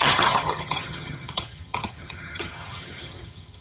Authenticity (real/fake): fake